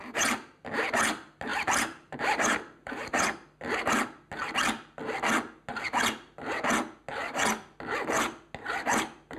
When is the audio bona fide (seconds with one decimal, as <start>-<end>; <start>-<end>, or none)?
0.0-1.5; 3.2-9.4